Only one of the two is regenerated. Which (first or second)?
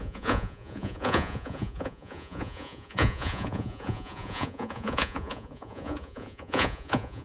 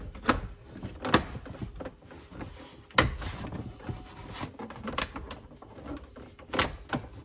first